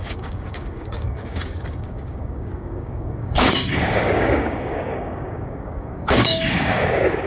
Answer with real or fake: fake